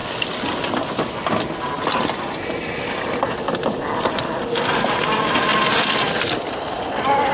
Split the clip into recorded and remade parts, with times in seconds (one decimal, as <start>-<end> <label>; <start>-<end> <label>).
0.0-7.3 recorded